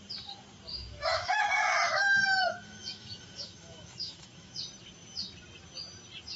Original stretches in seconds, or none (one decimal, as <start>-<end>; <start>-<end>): 0.0-0.7; 4.5-6.4